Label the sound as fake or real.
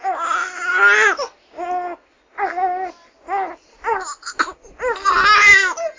real